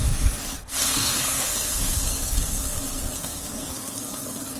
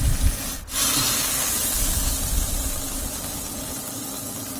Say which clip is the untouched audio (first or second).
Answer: second